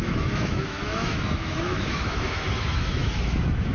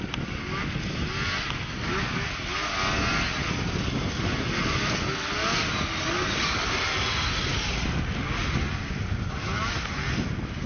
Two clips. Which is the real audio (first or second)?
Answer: second